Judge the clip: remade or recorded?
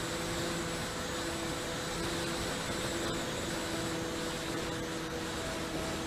recorded